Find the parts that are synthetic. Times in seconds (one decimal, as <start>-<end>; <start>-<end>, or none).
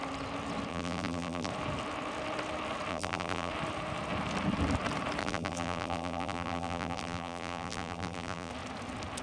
0.7-1.5; 2.9-3.5; 5.2-8.5